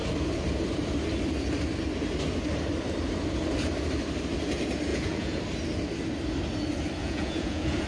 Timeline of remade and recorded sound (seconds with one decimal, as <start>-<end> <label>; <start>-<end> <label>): 0.0-4.9 recorded; 4.9-5.4 remade; 5.4-7.0 recorded; 7.0-7.9 remade